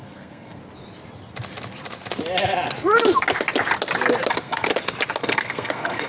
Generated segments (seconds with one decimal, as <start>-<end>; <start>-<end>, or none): 0.0-0.6; 4.3-4.7; 5.2-6.1

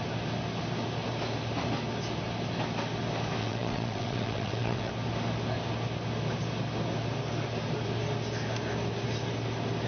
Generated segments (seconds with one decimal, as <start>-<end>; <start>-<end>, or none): 3.4-4.9

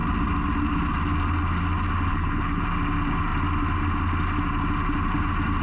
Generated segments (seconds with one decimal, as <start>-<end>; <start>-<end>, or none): 2.1-2.6

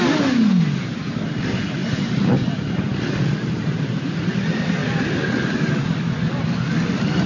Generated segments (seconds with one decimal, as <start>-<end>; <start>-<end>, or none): none

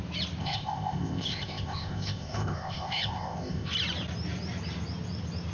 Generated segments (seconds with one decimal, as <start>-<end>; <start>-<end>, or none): 0.4-3.7

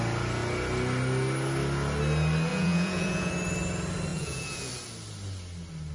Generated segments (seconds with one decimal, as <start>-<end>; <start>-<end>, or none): 2.5-3.3; 4.1-4.7

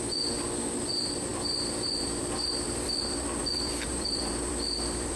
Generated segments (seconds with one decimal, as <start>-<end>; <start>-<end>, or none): 1.3-3.4; 3.9-5.2

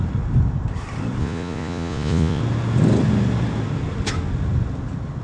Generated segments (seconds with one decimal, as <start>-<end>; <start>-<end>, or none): 1.2-2.4